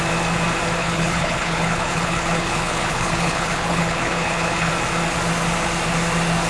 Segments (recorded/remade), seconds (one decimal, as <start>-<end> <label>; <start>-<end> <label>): 0.0-0.8 recorded; 0.8-4.7 remade; 4.7-6.5 recorded